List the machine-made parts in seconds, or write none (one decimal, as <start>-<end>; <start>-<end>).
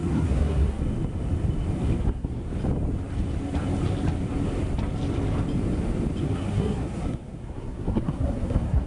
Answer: 0.0-0.8; 1.9-2.4; 6.2-8.9